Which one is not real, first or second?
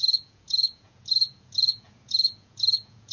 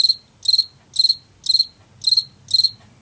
first